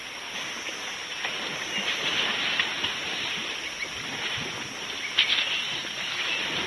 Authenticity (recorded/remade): recorded